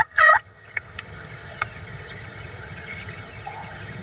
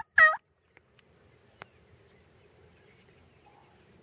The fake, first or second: first